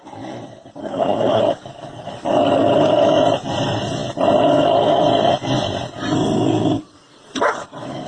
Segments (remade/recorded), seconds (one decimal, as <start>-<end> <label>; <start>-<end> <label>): 0.0-0.8 recorded; 0.8-1.4 remade; 1.4-8.1 recorded